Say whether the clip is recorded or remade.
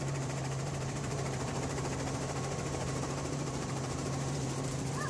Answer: remade